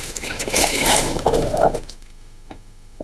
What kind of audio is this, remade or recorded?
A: remade